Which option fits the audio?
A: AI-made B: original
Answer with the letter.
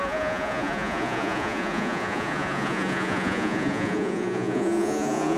A